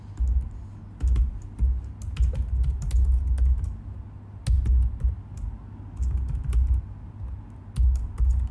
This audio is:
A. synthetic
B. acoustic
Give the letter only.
B